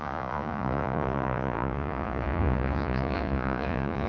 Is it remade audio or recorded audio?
remade